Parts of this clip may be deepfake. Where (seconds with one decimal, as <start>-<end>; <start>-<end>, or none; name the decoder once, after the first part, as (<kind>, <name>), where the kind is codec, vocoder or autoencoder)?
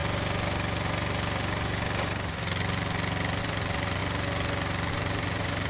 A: 3.4-4.0 (vocoder, BigVGAN v2); 4.9-5.7